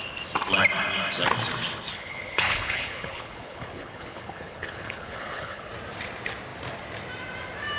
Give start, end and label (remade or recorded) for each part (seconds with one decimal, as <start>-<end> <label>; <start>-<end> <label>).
0.0-1.9 recorded; 1.9-5.7 remade; 5.7-7.8 recorded